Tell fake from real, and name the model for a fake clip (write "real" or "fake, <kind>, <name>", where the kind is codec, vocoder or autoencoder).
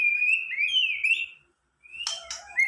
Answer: real